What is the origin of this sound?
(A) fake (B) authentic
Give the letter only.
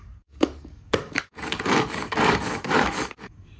A